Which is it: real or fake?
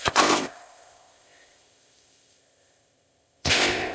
fake